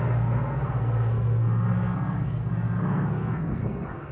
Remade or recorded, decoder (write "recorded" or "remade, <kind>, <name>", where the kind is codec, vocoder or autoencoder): remade, codec, SNAC